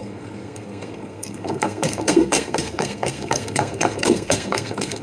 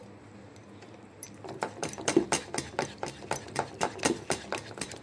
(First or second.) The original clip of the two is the second